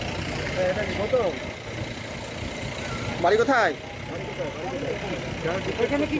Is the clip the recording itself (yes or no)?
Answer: yes